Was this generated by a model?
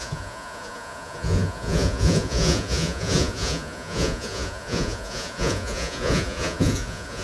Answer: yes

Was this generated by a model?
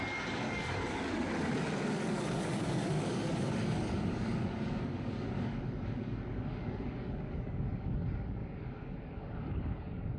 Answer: yes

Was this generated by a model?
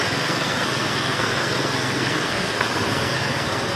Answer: yes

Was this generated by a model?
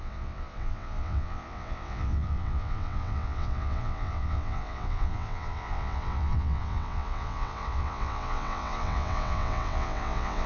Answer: yes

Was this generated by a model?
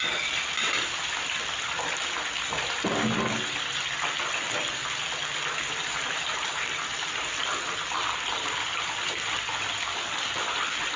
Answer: no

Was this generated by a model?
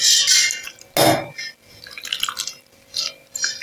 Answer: no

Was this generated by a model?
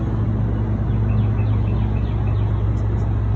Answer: no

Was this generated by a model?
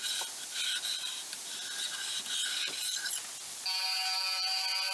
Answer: no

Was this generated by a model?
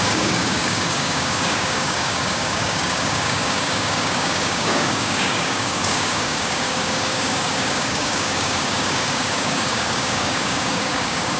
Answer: yes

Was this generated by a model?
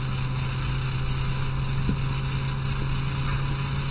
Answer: no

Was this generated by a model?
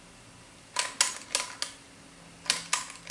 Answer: no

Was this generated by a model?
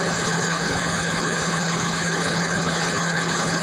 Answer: yes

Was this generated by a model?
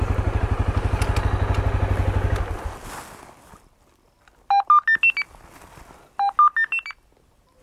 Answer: no